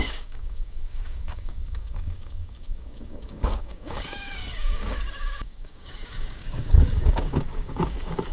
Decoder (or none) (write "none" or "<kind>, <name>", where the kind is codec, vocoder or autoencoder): codec, DAC